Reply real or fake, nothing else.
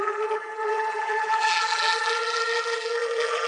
fake